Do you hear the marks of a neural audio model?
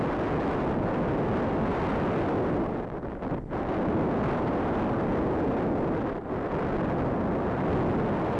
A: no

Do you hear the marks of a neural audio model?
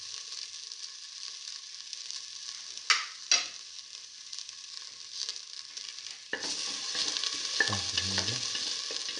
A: no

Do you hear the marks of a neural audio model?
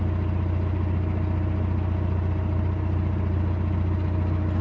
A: no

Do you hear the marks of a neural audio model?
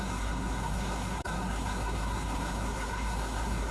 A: yes